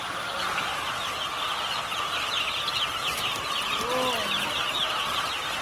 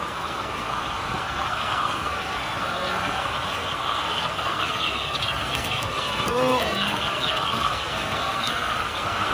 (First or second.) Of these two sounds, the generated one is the second